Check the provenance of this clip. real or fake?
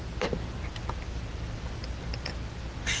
real